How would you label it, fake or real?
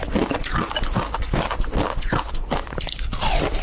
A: real